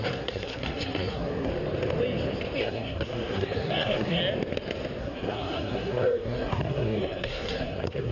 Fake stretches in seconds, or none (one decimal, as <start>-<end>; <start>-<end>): 0.0-1.5; 2.6-4.2; 5.0-8.1